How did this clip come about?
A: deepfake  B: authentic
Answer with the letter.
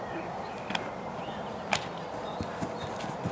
B